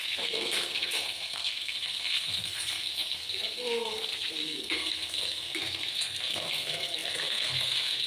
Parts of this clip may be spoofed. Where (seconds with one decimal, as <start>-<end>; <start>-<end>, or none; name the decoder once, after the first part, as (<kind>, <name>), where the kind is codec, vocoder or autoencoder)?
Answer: 0.0-8.1 (codec, SNAC)